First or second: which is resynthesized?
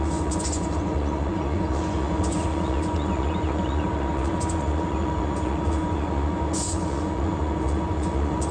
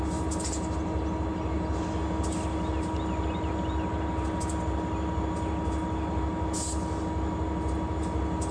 first